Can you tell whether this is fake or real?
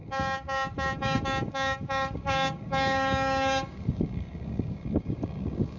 fake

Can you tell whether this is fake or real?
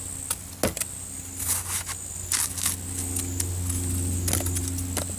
real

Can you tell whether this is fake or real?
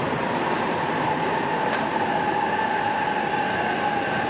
real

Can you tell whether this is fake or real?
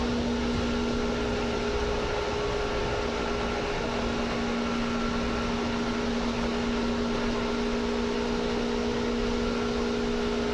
real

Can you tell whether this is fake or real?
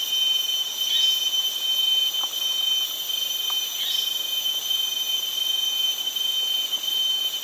real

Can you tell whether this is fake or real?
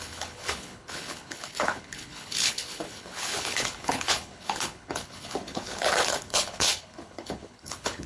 fake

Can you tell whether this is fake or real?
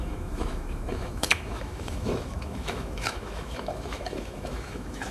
fake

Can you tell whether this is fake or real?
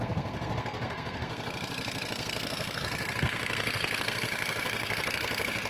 fake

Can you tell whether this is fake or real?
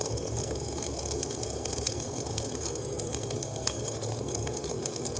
fake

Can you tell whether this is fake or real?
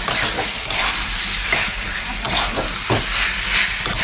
real